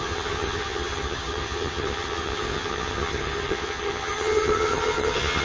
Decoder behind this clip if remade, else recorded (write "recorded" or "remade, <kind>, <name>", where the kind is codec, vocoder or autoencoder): remade, vocoder, HiFi-GAN